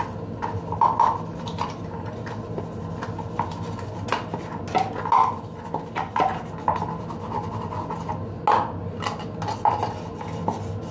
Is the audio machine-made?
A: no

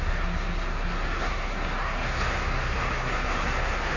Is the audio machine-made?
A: yes